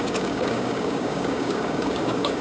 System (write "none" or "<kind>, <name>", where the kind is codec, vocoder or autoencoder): codec, DAC